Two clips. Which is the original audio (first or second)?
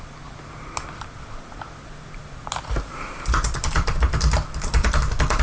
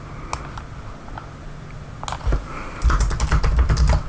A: second